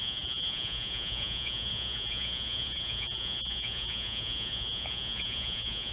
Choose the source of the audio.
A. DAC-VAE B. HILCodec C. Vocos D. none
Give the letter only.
C